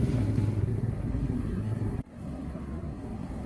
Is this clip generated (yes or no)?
yes